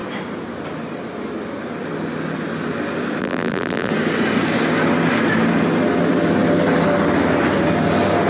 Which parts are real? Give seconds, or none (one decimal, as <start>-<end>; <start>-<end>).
0.0-3.2; 3.9-8.3